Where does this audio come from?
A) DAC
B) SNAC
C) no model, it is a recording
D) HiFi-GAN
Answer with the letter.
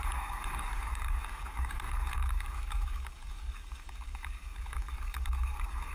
A